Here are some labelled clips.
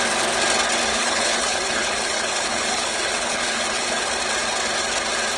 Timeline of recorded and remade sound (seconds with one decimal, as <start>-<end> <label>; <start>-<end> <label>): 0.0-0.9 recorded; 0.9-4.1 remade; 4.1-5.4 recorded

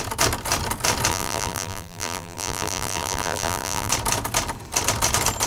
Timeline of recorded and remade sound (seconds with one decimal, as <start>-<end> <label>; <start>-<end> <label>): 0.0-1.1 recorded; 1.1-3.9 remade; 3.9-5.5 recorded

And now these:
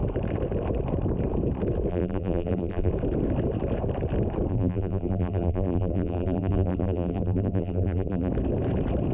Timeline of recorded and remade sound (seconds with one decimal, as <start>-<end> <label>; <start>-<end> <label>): 0.0-1.9 recorded; 1.9-2.9 remade; 2.9-4.5 recorded; 4.5-8.3 remade; 8.3-9.1 recorded

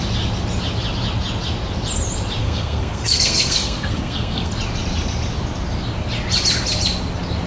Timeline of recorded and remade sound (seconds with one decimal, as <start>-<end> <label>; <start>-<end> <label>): 0.0-2.4 recorded; 2.4-4.5 remade; 4.5-7.5 recorded